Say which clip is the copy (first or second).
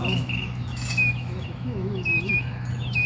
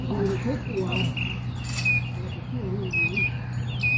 first